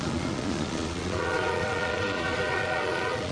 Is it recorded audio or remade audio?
remade